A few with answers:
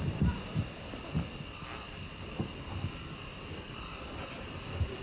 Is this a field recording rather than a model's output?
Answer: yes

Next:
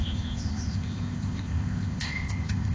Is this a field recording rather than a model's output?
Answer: no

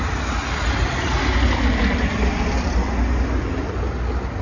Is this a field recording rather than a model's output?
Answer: yes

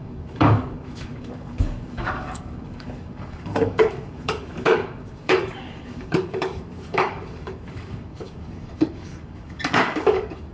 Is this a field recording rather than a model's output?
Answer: no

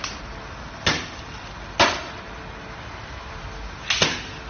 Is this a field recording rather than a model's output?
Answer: yes